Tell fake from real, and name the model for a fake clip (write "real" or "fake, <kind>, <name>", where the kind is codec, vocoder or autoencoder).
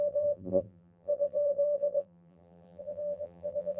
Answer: fake, vocoder, BigVGAN v2